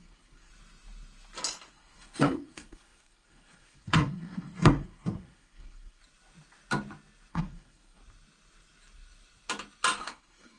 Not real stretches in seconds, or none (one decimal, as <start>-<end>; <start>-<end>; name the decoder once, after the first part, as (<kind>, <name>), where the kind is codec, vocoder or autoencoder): 0.0-0.5 (codec, SNAC); 1.7-6.0; 7.3-8.0; 10.0-10.6